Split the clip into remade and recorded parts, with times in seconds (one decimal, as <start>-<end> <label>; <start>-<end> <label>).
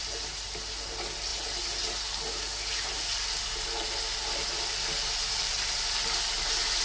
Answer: 0.0-6.8 recorded